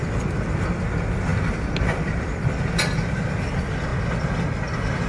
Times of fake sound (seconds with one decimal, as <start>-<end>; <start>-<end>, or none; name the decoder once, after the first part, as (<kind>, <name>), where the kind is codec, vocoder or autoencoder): none